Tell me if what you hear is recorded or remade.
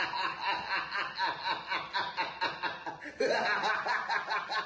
recorded